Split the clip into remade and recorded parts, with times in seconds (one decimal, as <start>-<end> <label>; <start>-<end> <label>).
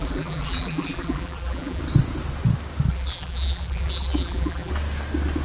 0.0-1.8 remade; 1.8-2.9 recorded; 2.9-4.7 remade; 4.7-5.4 recorded